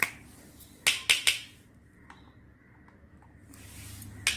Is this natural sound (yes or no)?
yes